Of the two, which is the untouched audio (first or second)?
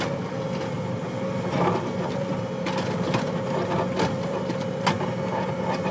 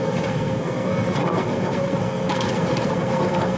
first